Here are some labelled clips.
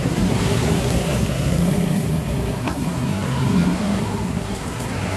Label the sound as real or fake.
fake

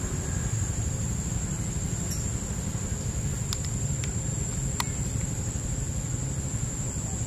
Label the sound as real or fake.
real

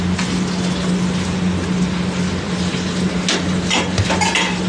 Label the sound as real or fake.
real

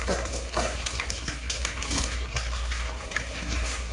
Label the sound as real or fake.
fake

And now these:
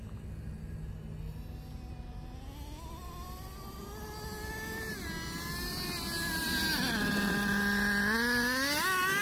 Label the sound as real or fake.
real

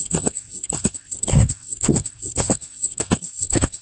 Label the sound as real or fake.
fake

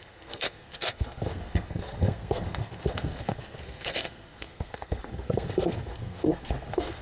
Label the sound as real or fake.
fake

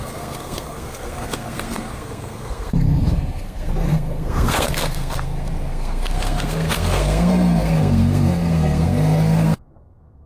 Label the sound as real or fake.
fake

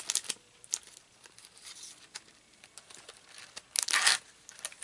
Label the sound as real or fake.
real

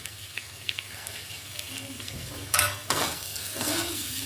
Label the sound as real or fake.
fake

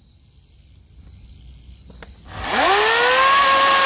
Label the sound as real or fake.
real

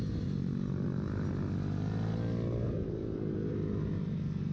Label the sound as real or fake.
real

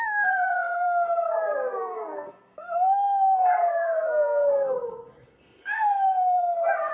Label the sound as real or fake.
fake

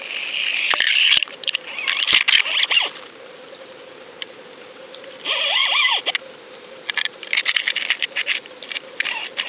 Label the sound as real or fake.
real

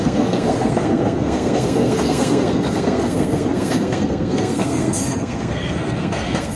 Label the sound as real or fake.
fake